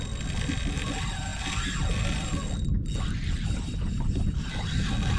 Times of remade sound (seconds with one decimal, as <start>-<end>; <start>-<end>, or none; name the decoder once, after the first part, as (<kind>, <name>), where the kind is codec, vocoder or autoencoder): none